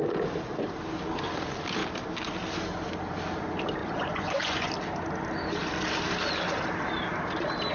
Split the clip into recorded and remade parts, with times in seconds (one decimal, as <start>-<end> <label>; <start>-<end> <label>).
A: 0.0-3.8 recorded; 3.8-4.7 remade; 4.7-7.7 recorded